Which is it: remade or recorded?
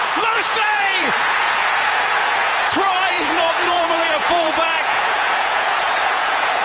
remade